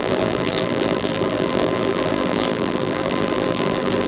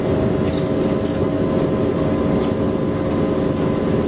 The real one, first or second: second